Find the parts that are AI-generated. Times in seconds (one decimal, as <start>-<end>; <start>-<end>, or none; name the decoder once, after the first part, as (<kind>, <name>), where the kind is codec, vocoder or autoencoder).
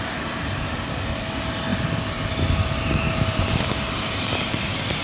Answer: 1.7-5.0 (vocoder, BigVGAN v2)